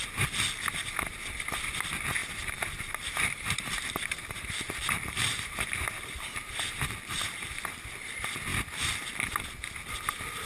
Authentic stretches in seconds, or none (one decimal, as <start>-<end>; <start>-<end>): 0.0-2.2; 7.0-10.5